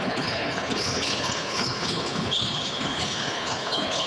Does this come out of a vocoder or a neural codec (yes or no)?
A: yes